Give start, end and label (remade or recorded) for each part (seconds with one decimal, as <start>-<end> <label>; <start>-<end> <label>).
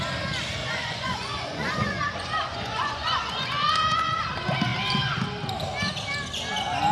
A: 0.0-0.6 recorded; 0.6-4.2 remade; 4.2-6.9 recorded